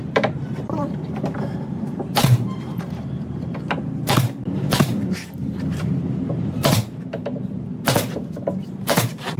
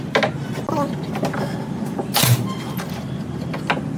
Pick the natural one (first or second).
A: second